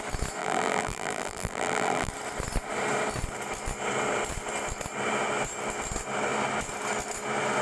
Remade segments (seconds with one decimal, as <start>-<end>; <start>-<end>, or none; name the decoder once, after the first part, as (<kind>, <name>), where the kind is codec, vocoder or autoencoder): 0.4-2.1 (vocoder, BigVGAN v2)